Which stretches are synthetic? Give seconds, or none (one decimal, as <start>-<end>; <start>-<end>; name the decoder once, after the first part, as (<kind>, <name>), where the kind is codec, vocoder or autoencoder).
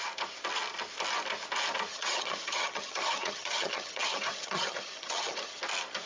1.9-5.6 (vocoder, HiFi-GAN)